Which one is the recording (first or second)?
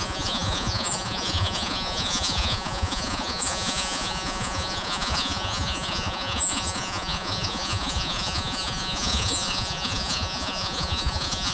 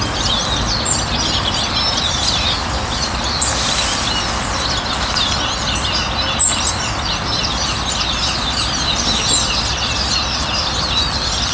second